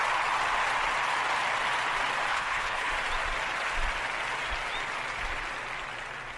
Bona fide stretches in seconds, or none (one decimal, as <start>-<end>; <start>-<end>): 0.0-2.3; 2.9-6.4